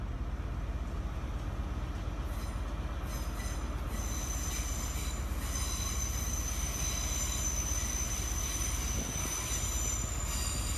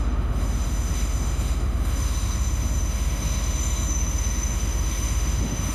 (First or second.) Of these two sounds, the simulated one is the second